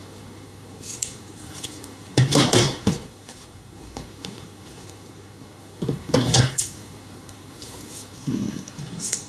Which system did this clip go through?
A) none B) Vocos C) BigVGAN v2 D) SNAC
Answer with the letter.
D